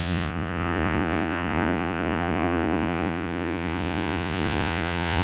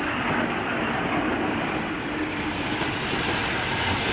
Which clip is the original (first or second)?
second